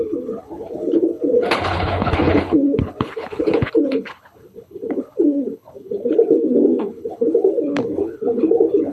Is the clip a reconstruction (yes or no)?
yes